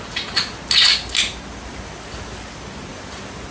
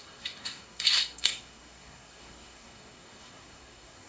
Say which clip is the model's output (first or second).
second